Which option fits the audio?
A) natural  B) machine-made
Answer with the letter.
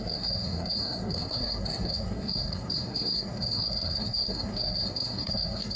B